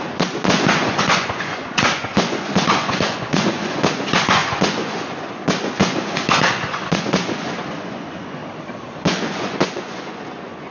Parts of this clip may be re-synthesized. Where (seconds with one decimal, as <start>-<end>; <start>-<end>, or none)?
0.0-8.4; 8.9-10.7